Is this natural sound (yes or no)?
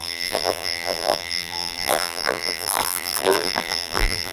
no